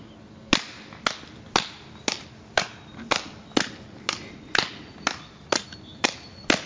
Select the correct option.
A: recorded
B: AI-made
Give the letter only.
A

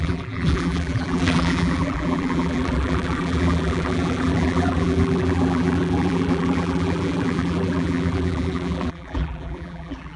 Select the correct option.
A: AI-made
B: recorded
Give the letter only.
A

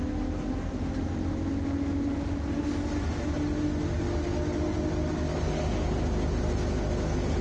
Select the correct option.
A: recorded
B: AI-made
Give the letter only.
A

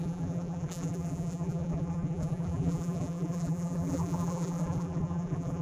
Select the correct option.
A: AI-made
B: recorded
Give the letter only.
A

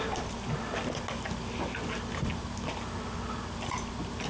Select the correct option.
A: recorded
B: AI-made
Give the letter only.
A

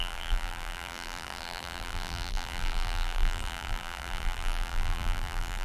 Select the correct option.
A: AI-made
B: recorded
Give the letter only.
A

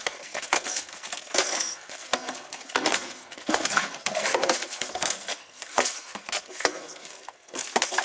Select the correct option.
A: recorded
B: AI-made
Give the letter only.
B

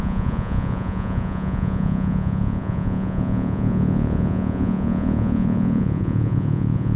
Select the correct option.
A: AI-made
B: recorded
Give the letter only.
A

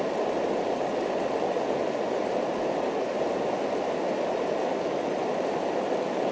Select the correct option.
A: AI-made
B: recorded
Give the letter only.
B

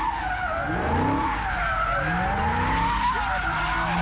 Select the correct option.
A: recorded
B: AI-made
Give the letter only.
A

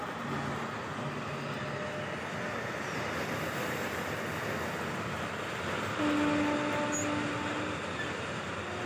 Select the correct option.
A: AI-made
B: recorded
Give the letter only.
B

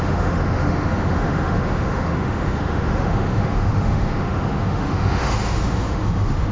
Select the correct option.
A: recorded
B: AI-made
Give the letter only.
B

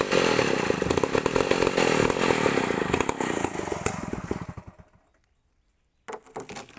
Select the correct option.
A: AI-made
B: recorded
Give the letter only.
B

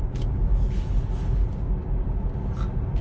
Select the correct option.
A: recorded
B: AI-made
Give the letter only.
A